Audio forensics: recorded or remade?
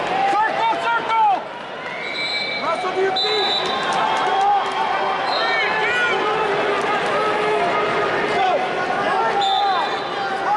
recorded